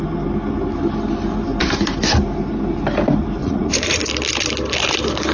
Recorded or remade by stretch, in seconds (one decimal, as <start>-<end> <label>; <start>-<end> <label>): 0.0-3.4 recorded; 3.4-4.0 remade; 4.0-5.3 recorded